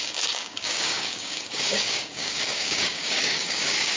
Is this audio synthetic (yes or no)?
yes